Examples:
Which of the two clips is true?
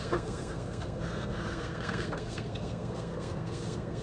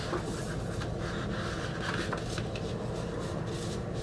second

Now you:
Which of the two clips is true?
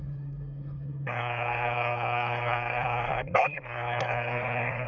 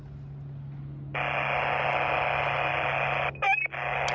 second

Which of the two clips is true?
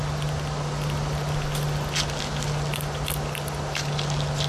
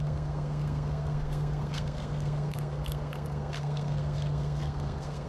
first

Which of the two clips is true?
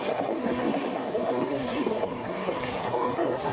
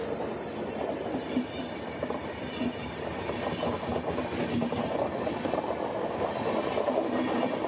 second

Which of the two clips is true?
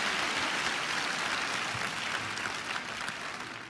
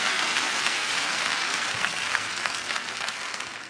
first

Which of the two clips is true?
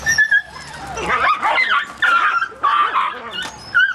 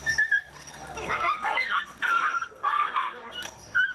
first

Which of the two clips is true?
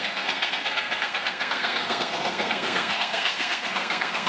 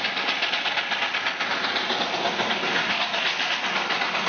second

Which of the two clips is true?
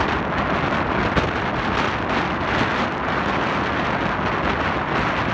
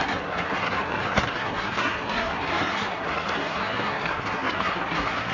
first